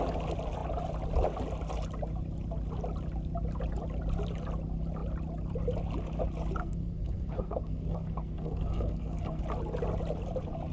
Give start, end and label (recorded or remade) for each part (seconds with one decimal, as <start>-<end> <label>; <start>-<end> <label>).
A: 0.0-6.6 recorded; 6.6-9.4 remade; 9.4-10.7 recorded

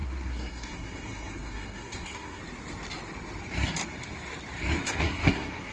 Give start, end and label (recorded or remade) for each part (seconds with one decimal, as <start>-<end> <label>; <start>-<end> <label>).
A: 0.0-2.4 remade; 2.4-4.8 recorded; 4.8-5.7 remade